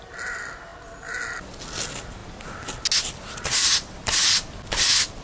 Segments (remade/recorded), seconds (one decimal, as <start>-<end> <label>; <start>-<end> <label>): 0.0-5.2 recorded